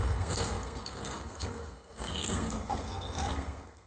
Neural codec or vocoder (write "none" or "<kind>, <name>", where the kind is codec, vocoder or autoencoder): codec, SNAC